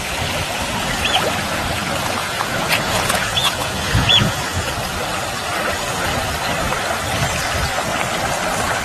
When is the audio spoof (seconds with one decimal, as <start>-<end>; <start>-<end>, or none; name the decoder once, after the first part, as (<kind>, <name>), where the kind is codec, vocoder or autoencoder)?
2.2-4.7 (vocoder, Vocos)